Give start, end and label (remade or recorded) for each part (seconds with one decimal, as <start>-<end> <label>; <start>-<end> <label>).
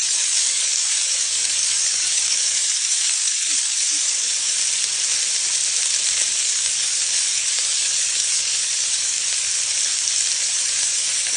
0.0-4.6 remade; 4.6-6.4 recorded; 6.4-9.5 remade; 9.5-10.4 recorded; 10.4-11.4 remade